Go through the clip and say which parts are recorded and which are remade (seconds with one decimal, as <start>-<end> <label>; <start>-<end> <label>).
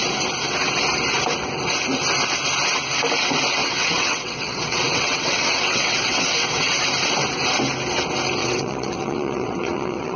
0.0-3.6 recorded; 3.6-6.7 remade; 6.7-8.4 recorded; 8.4-10.2 remade